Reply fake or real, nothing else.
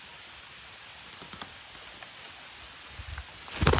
real